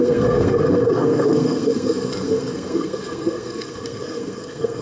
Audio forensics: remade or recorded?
remade